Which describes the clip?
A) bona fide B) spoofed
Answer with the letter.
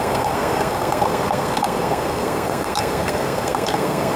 B